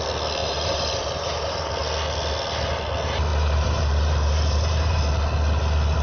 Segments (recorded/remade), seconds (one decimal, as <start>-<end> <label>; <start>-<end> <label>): 0.0-0.4 recorded; 0.4-1.7 remade; 1.7-3.3 recorded; 3.3-5.0 remade; 5.0-6.0 recorded